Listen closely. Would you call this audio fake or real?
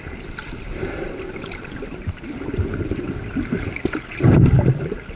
real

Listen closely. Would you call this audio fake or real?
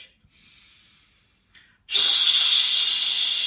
real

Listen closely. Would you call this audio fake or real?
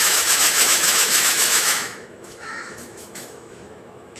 fake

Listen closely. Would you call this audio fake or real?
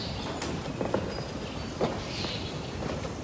real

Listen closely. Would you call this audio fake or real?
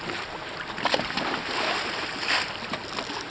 real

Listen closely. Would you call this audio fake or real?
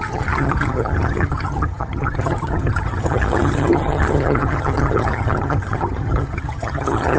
fake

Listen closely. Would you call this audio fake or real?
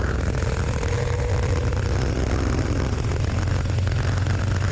real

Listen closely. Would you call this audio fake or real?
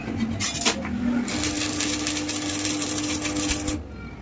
real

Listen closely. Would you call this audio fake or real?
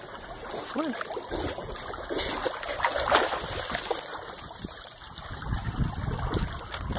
real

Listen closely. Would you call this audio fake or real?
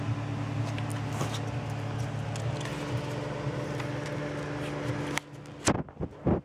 real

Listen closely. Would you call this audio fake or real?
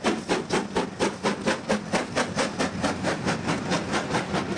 real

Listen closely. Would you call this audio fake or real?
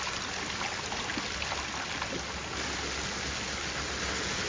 real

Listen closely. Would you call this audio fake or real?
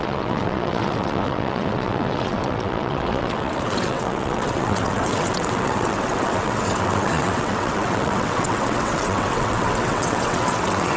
fake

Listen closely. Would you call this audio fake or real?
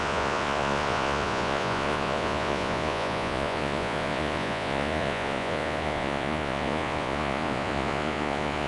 fake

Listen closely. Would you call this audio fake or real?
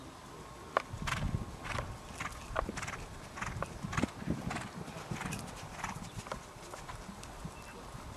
real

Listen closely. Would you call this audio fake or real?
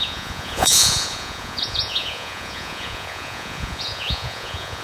fake